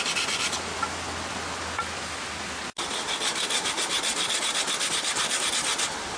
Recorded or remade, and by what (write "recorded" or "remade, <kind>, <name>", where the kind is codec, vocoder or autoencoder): recorded